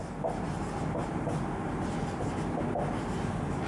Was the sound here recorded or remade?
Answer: recorded